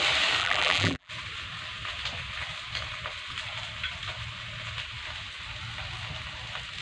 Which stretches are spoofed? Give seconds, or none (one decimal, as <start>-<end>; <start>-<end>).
0.4-1.1